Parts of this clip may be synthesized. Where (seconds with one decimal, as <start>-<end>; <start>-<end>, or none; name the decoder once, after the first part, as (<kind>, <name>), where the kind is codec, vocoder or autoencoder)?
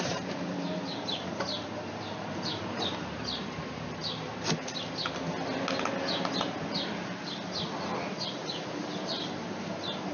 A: 0.0-4.3 (vocoder, BigVGAN v2); 8.1-10.1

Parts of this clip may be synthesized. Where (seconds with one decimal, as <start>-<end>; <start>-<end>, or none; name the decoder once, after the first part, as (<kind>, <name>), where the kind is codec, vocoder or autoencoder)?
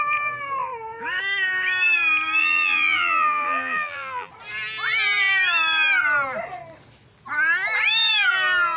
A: 2.4-4.3 (vocoder, BigVGAN v2)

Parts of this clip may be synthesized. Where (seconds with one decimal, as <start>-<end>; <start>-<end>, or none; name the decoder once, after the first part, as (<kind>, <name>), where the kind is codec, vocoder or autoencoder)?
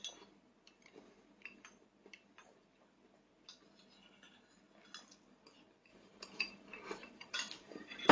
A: 5.9-8.1 (vocoder, BigVGAN v2)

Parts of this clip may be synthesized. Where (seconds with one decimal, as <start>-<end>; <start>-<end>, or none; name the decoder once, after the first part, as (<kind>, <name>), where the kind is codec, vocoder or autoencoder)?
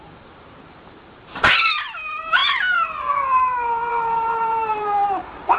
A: 0.0-2.4 (vocoder, BigVGAN v2); 3.9-5.6